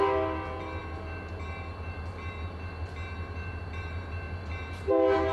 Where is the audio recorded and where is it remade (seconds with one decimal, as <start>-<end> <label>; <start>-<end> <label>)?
0.0-5.3 recorded